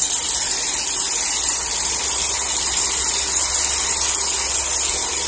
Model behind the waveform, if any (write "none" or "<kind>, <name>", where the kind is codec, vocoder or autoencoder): none